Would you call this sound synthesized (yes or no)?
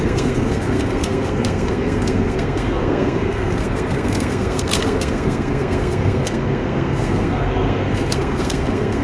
yes